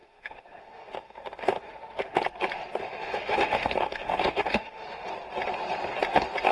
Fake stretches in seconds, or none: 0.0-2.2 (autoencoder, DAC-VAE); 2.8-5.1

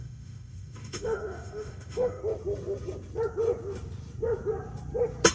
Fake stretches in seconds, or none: 0.0-2.2 (autoencoder, DAC-VAE)

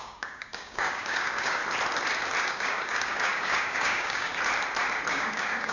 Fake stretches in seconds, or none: 0.0-1.6 (codec, DAC); 2.4-4.3; 5.1-5.7

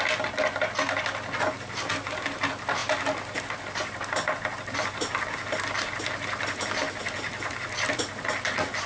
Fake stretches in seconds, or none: none

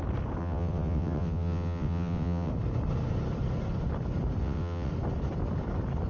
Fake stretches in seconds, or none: 0.4-2.5 (vocoder, WaveNeXt); 4.4-4.9

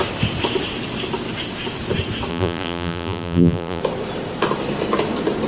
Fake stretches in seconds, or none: 2.3-3.8 (vocoder, BigVGAN v2)

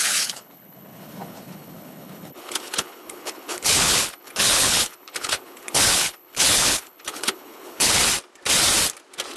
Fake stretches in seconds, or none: 0.0-8.0 (codec, HILCodec)

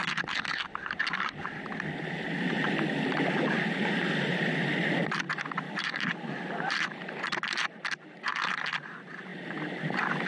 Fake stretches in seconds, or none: none